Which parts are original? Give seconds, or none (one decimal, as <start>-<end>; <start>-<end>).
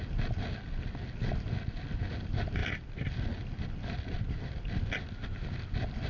0.0-2.6; 5.2-6.1